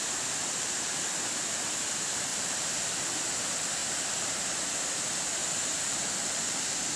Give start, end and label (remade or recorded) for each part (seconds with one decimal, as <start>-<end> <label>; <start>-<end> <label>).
0.0-2.3 recorded; 2.3-3.3 remade; 3.3-3.8 recorded; 3.8-4.4 remade; 4.4-5.4 recorded; 5.4-6.6 remade; 6.6-7.0 recorded

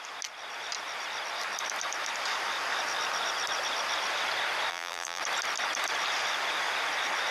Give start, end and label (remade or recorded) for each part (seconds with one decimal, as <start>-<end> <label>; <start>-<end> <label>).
0.0-4.7 recorded; 4.7-5.2 remade; 5.2-7.3 recorded

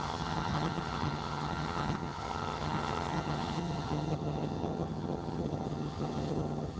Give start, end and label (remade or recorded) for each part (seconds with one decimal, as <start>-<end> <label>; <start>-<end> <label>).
0.0-6.8 remade

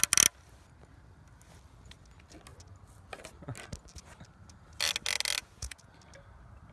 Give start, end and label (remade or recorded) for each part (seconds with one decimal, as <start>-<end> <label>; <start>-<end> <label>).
0.0-5.4 recorded; 5.4-5.9 remade; 5.9-6.7 recorded

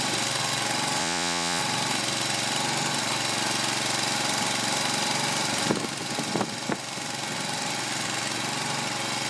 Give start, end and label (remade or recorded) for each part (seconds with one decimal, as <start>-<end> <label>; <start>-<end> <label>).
0.0-1.0 recorded; 1.0-1.6 remade; 1.6-9.3 recorded

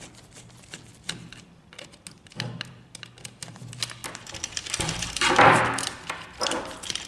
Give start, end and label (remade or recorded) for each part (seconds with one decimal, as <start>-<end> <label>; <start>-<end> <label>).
0.0-7.1 recorded

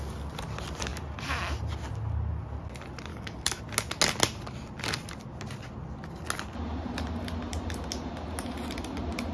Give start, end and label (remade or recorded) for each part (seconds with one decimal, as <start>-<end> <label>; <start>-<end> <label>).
0.0-3.1 recorded; 3.1-3.6 remade; 3.6-9.3 recorded